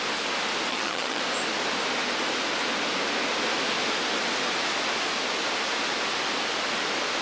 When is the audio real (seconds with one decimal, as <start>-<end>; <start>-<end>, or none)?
0.0-0.7; 1.2-7.2